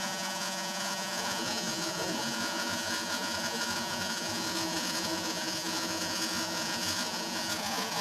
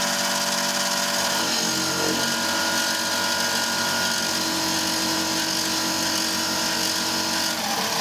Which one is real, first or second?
second